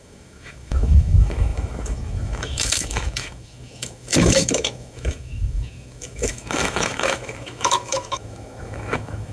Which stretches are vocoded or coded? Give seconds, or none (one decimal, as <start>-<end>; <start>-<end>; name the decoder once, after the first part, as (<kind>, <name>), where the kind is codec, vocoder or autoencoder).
0.0-9.3 (autoencoder, DAC-VAE)